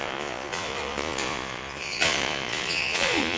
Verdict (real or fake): fake